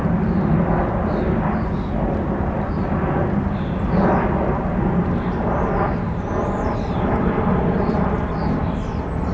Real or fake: real